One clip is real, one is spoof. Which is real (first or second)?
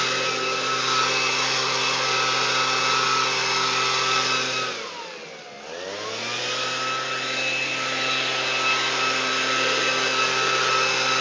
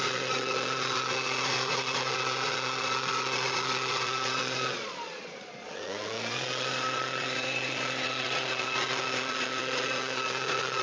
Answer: first